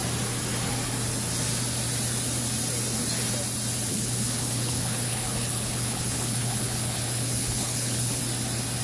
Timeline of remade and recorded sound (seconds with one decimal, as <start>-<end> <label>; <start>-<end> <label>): 0.0-3.9 recorded; 3.9-8.2 remade; 8.2-8.8 recorded